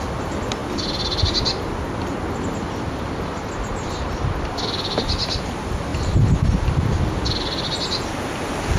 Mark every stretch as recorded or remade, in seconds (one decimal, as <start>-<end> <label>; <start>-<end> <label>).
0.0-8.8 recorded